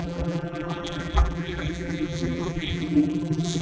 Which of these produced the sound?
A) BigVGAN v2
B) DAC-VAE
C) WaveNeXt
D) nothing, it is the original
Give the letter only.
A